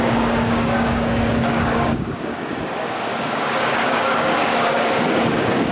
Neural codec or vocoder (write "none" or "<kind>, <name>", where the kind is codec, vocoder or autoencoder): codec, DAC